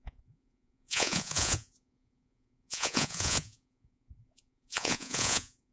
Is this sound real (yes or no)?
no